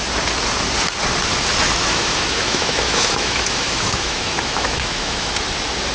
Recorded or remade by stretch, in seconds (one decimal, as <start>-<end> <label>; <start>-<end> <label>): 0.0-1.8 recorded; 1.8-5.3 remade; 5.3-5.9 recorded